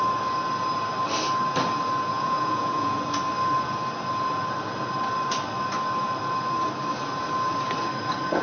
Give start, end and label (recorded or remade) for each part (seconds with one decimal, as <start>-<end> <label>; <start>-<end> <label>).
0.0-2.1 recorded; 2.1-3.0 remade; 3.0-8.4 recorded